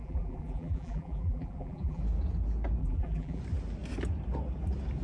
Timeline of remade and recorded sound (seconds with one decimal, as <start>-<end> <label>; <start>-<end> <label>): 0.0-2.0 remade; 2.0-2.8 recorded; 2.8-3.4 remade; 3.4-5.0 recorded

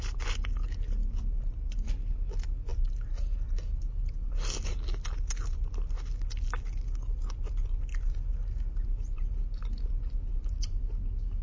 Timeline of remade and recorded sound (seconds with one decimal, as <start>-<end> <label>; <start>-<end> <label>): 0.0-2.7 recorded; 2.7-3.3 remade; 3.3-11.4 recorded